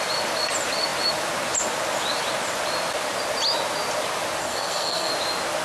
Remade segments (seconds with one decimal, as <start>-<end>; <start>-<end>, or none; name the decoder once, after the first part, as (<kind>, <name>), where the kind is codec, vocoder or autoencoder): 4.4-5.1 (codec, SNAC)